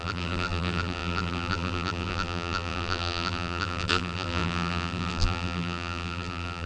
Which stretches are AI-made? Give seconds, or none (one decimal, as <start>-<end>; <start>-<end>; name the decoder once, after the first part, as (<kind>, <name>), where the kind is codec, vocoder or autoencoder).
0.0-6.7 (vocoder, BigVGAN v2)